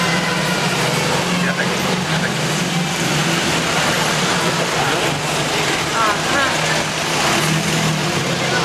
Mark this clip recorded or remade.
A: recorded